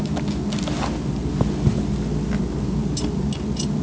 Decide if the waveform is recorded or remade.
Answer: recorded